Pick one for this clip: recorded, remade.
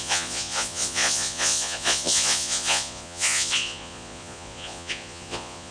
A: remade